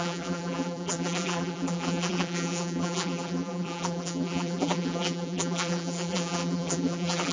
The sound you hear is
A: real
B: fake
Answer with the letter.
B